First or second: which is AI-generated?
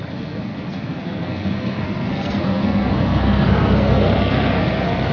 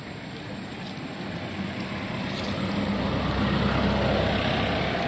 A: first